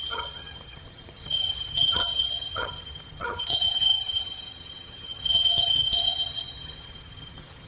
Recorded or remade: remade